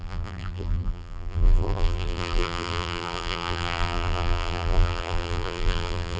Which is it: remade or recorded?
remade